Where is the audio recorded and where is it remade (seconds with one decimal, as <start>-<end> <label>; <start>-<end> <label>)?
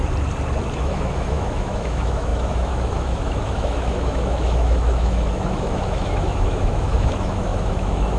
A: 0.0-0.8 recorded; 0.8-8.2 remade